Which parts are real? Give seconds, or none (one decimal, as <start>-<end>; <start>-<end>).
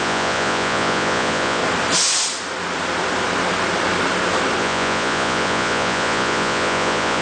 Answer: 1.6-4.6